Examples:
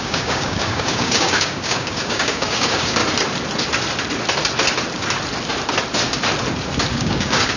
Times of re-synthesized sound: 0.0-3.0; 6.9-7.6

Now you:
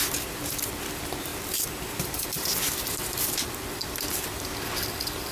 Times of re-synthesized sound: none

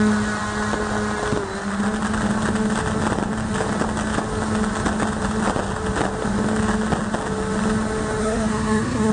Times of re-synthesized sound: 8.2-9.1